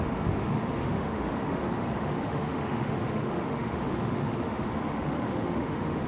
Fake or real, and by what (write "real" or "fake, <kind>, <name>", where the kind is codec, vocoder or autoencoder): fake, autoencoder, DAC-VAE